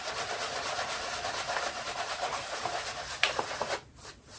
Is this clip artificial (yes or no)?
no